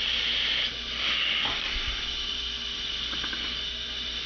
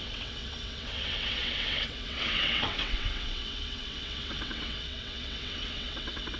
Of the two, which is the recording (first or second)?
first